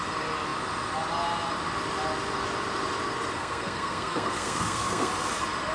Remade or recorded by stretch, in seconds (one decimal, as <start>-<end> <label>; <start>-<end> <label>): 0.0-3.4 recorded; 3.4-5.1 remade; 5.1-5.7 recorded